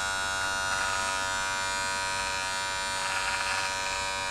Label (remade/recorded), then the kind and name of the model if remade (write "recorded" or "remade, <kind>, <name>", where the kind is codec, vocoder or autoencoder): recorded